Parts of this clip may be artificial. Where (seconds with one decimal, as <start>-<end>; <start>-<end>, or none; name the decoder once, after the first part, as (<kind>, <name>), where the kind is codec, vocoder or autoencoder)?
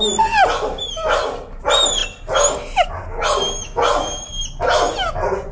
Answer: none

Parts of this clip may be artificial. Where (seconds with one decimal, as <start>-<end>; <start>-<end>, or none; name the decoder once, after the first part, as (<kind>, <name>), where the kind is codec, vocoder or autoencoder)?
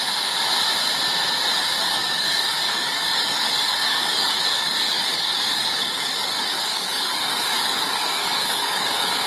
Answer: 1.8-9.3 (codec, DAC)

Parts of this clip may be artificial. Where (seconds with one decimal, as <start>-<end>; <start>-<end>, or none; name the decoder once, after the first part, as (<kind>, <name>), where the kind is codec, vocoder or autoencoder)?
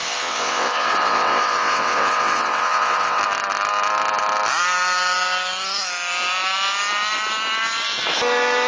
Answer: 0.0-3.2 (vocoder, WaveNeXt)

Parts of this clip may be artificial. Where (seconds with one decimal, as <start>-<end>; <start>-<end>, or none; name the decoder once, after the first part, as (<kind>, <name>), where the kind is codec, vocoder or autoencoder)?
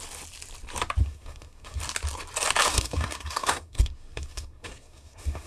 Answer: 1.0-1.8 (codec, SNAC); 2.7-5.5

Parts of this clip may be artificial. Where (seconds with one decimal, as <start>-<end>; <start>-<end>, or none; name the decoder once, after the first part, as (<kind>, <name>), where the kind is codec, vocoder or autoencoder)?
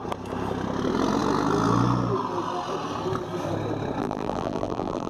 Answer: 4.0-5.1 (vocoder, BigVGAN v2)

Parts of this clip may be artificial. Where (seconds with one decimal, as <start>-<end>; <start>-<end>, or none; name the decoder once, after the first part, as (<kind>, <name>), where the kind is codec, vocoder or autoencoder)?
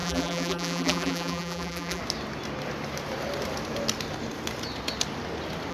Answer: 0.0-2.0 (vocoder, BigVGAN v2)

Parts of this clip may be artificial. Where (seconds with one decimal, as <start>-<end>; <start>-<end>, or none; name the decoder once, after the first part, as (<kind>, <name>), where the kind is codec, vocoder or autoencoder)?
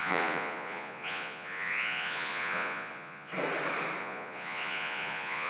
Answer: 0.0-3.3 (vocoder, Vocos); 4.0-5.5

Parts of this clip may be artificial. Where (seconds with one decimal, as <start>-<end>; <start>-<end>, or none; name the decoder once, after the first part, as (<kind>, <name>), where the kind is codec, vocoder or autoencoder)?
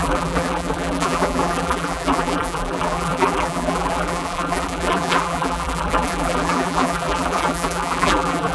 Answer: 0.0-8.5 (vocoder, BigVGAN v2)